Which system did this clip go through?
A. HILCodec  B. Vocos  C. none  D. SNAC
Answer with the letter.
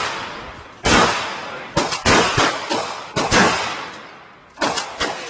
C